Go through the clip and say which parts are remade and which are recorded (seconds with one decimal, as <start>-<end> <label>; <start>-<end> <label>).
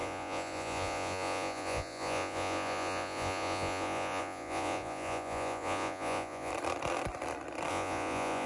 0.0-6.5 remade; 6.5-7.7 recorded; 7.7-8.5 remade